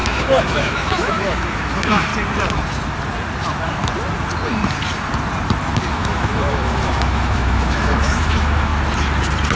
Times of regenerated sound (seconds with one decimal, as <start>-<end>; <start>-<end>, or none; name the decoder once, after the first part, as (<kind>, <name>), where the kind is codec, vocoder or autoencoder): 0.0-2.1 (autoencoder, DAC-VAE); 5.9-8.7